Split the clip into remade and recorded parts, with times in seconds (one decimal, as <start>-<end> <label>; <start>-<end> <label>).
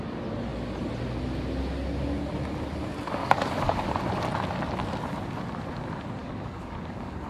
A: 0.0-3.2 recorded; 3.2-3.9 remade; 3.9-6.2 recorded; 6.2-7.3 remade